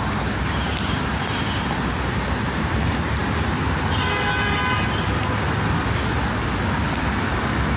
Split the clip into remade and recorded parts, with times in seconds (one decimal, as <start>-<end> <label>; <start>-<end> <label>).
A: 0.0-0.4 recorded; 0.4-1.1 remade; 1.1-7.8 recorded